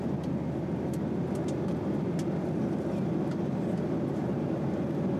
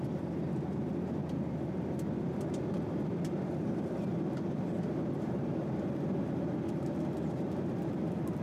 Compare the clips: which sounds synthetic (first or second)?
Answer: second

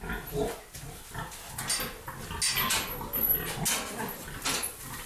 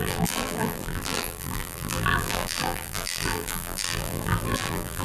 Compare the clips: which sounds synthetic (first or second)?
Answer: second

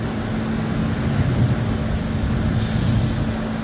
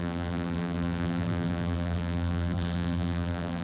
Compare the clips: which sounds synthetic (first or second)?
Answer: second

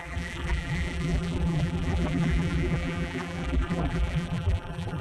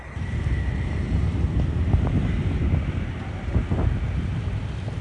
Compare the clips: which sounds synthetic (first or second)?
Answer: first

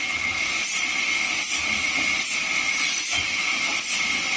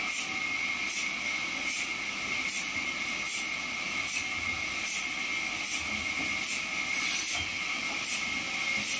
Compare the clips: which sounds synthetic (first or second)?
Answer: first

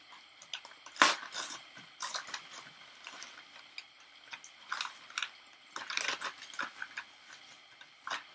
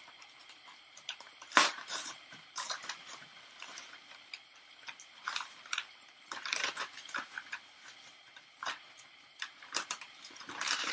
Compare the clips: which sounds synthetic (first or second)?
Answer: second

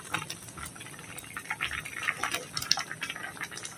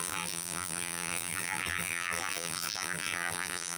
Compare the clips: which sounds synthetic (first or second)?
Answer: second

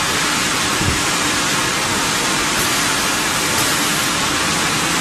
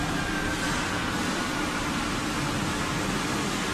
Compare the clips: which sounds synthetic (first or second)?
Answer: first